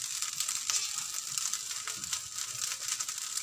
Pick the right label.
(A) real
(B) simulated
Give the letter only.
A